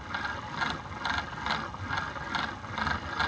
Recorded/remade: recorded